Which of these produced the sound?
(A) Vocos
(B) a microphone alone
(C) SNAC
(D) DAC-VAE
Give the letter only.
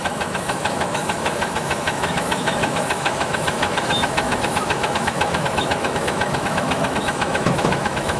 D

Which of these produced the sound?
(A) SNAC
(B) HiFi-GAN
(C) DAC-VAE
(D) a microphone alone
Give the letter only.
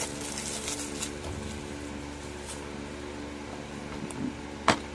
D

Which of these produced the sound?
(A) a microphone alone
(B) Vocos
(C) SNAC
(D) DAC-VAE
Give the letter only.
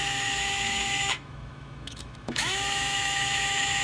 D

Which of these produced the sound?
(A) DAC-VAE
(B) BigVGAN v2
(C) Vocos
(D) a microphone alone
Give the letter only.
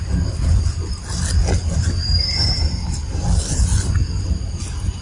D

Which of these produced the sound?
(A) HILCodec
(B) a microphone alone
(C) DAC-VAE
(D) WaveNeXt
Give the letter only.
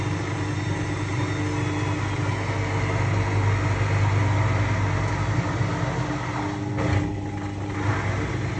B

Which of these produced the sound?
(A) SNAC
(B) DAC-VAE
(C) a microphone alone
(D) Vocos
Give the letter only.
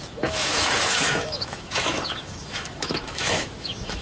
B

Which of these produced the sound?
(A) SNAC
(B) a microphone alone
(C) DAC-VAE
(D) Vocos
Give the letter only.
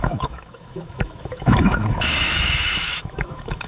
C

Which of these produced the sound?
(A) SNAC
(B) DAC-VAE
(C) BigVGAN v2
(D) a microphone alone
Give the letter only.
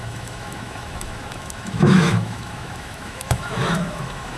B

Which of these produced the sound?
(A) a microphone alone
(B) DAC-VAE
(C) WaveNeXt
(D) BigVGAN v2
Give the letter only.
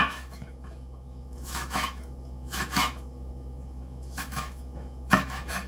B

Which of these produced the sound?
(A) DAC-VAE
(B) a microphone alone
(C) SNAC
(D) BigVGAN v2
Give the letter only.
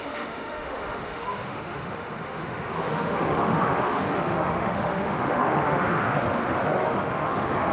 A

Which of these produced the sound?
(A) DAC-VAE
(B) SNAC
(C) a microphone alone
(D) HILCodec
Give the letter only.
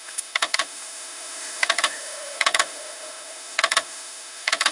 A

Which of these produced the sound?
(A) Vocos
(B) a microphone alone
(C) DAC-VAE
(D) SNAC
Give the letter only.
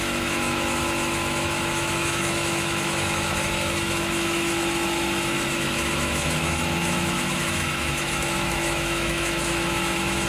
C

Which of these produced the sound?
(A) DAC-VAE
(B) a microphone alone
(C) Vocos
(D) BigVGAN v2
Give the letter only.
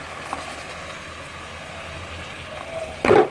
B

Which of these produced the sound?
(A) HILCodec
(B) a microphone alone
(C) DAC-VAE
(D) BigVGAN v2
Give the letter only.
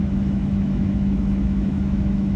C